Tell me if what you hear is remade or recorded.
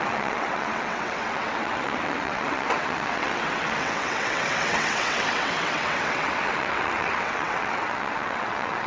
remade